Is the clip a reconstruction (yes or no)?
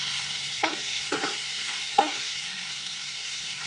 yes